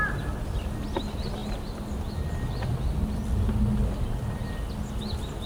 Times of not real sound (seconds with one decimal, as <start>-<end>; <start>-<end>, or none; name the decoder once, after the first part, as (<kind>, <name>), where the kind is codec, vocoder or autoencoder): none